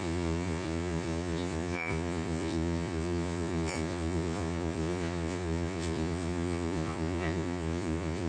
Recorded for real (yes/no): no